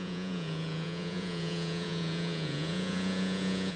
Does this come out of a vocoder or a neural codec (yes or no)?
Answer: yes